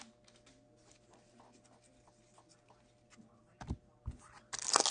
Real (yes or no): yes